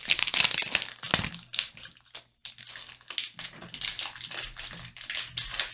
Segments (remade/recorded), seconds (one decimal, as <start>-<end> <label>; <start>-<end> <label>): 0.0-5.7 recorded

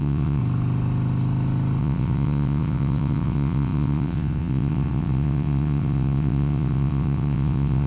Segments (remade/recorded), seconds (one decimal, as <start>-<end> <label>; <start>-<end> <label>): 0.0-0.4 remade; 0.4-1.8 recorded; 1.8-7.9 remade

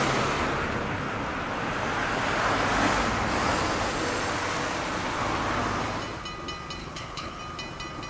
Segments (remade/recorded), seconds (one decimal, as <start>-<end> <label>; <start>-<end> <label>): 0.0-6.8 recorded; 6.8-7.4 remade; 7.4-8.1 recorded

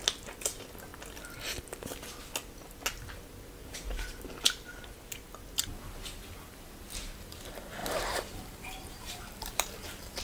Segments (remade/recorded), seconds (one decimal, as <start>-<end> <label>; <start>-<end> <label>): 0.0-3.6 recorded; 3.6-4.2 remade; 4.2-7.8 recorded; 7.8-10.2 remade

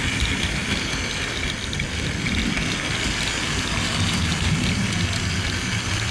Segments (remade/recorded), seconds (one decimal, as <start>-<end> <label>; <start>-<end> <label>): 0.0-6.1 recorded

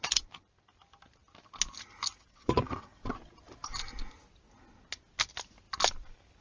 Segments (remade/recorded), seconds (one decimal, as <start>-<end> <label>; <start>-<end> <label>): 0.0-2.1 recorded; 2.1-3.1 remade; 3.1-6.4 recorded